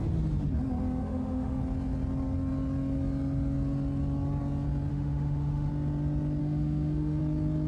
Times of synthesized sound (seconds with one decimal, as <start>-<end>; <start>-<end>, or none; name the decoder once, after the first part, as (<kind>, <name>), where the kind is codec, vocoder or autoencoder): 1.0-1.6 (autoencoder, DAC-VAE); 4.9-5.7; 6.4-7.2